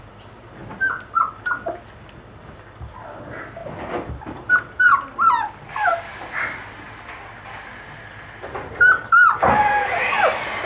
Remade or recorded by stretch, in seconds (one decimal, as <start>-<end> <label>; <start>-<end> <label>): 0.0-10.7 recorded